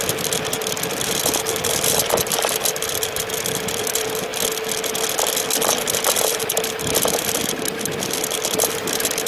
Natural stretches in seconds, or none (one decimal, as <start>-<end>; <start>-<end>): 4.3-6.1